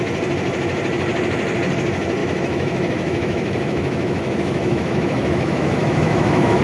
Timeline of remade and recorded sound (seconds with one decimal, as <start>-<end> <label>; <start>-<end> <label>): 0.0-2.2 recorded; 2.2-6.6 remade